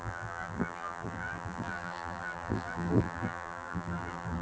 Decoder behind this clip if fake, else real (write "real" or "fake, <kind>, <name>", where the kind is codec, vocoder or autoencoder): fake, vocoder, BigVGAN v2